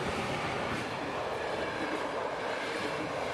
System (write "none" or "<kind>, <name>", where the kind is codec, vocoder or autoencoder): none